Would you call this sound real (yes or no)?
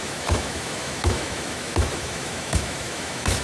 no